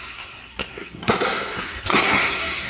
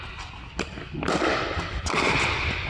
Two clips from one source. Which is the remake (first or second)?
first